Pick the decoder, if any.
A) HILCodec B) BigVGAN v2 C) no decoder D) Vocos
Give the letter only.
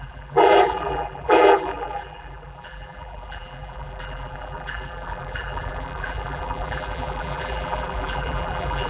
B